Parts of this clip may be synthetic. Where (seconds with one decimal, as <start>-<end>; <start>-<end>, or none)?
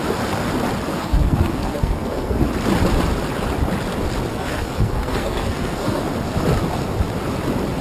0.9-2.4; 4.3-6.1